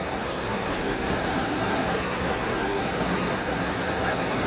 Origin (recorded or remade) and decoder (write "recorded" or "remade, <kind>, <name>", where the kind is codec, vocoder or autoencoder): remade, codec, SNAC